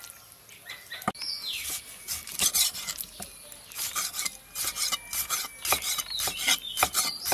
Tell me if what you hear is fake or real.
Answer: real